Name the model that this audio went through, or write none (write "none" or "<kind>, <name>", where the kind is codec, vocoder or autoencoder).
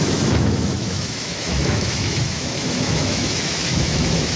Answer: autoencoder, DAC-VAE